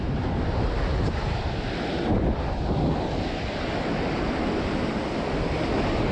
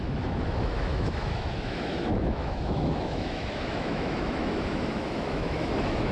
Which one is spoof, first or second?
second